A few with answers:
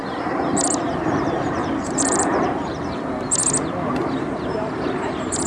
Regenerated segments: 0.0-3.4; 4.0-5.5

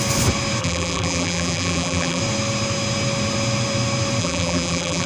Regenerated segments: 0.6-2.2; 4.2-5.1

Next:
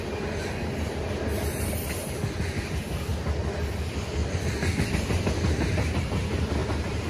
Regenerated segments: 4.2-4.9

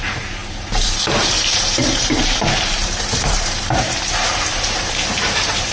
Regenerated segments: 0.0-5.7